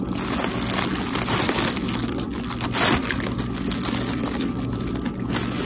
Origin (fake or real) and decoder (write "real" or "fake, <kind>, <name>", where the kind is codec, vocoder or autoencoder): real